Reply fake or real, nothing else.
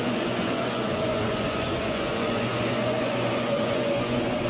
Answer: fake